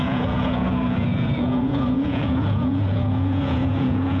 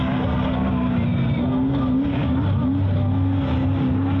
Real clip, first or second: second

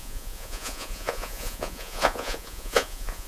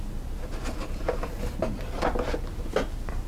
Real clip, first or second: second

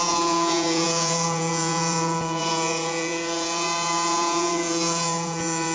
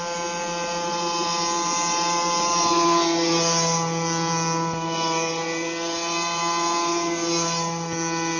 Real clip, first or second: second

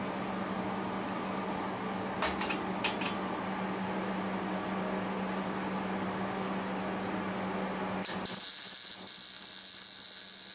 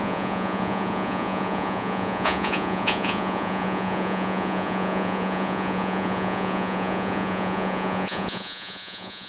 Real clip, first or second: first